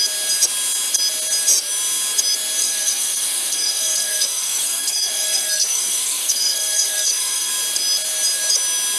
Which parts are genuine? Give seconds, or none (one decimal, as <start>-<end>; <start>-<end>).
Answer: 0.0-2.6; 7.5-9.0